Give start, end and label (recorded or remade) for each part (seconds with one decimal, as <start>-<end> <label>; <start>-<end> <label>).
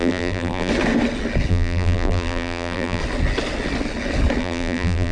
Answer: 0.0-0.7 remade; 0.7-1.5 recorded; 1.5-3.0 remade; 3.0-4.4 recorded; 4.4-5.1 remade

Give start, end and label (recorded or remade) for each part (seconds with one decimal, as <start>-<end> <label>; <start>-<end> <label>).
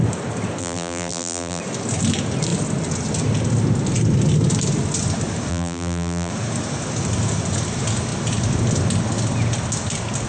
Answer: 0.0-0.6 recorded; 0.6-1.6 remade; 1.6-5.5 recorded; 5.5-6.3 remade; 6.3-10.3 recorded